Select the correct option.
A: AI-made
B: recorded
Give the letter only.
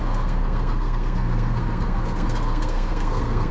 A